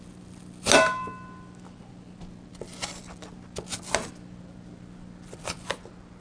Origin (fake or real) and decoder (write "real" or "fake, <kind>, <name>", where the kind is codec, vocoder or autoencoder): real